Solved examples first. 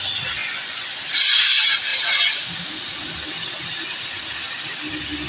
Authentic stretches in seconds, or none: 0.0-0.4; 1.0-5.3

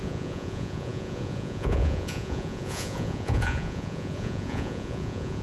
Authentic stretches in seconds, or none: none